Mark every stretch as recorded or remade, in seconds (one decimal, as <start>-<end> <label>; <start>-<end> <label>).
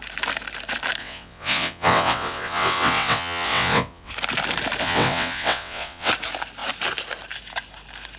0.0-1.0 recorded; 1.0-4.1 remade; 4.1-4.8 recorded; 4.8-6.1 remade; 6.1-8.2 recorded